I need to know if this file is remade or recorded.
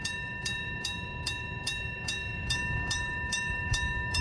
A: remade